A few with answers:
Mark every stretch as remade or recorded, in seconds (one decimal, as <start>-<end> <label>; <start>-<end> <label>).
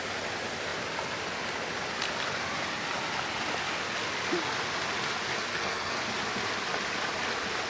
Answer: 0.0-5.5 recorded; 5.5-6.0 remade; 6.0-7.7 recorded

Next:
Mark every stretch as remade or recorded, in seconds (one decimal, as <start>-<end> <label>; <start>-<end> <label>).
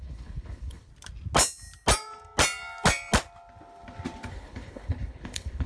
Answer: 0.0-0.9 remade; 0.9-4.3 recorded; 4.3-5.7 remade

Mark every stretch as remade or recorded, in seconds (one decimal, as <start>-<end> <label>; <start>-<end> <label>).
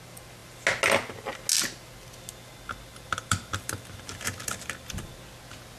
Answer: 0.0-2.9 recorded; 2.9-5.1 remade; 5.1-5.8 recorded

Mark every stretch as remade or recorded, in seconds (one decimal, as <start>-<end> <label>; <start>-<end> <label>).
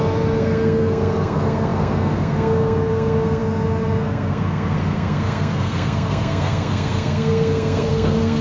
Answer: 0.0-8.4 remade